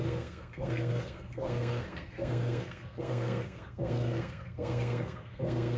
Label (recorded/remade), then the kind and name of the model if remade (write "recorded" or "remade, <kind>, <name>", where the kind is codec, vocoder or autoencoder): remade, codec, SNAC